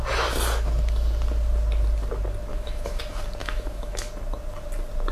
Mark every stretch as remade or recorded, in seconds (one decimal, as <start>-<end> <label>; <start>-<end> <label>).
0.0-2.5 recorded; 2.5-3.0 remade; 3.0-3.4 recorded; 3.4-4.1 remade; 4.1-5.1 recorded